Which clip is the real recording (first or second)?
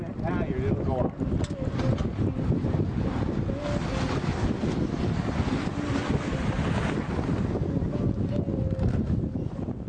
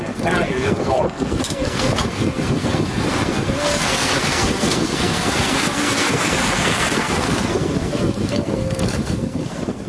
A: first